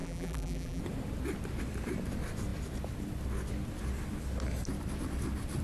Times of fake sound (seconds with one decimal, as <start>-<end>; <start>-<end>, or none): 0.0-0.8

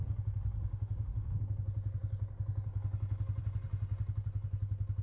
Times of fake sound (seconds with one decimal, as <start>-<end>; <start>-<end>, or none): 0.6-1.4

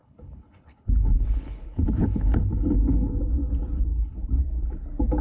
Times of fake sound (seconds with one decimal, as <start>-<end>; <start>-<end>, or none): 0.0-3.1; 3.9-4.7

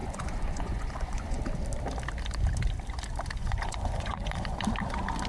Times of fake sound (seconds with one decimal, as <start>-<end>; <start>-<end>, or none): 0.0-1.4; 3.4-4.6